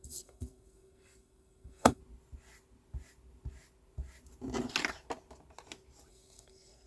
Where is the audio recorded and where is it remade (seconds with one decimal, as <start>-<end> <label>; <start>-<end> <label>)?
0.0-2.0 remade; 2.0-6.1 recorded; 6.1-6.9 remade